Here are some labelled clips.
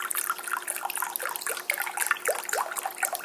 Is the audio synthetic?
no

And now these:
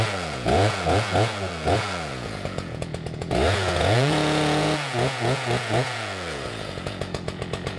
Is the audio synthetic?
yes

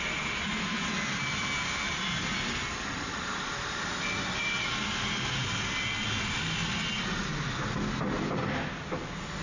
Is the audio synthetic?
no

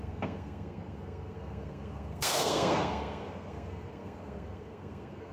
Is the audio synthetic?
yes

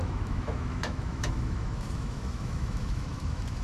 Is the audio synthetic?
yes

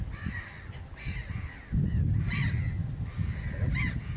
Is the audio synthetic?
no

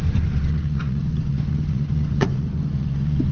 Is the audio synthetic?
yes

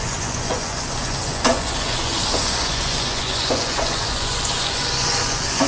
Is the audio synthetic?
yes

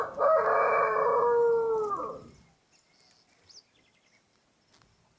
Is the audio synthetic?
no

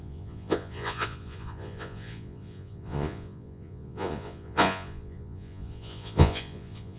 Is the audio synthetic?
yes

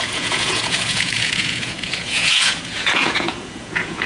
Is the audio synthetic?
yes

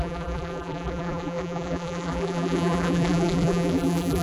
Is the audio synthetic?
yes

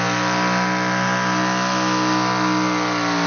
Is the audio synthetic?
no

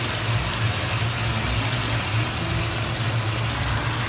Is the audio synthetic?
no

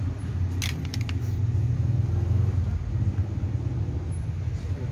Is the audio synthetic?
no